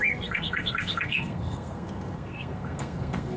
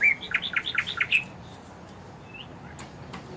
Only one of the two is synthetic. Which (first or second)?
first